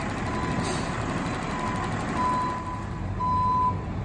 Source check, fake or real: real